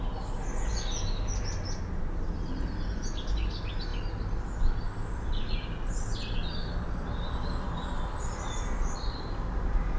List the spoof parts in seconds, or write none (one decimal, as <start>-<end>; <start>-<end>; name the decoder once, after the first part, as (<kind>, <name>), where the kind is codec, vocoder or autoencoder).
none